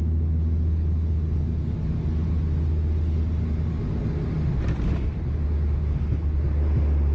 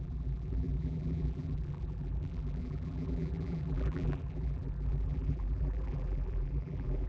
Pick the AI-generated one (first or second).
second